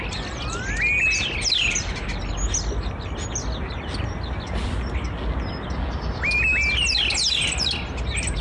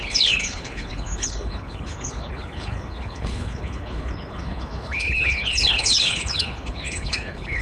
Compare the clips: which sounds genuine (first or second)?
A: first